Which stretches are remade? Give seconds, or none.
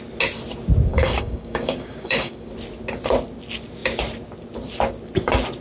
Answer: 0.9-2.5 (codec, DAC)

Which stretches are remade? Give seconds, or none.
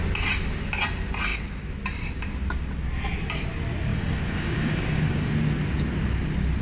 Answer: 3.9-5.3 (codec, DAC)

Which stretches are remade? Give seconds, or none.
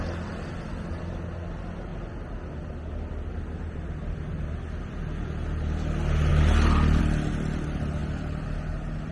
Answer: none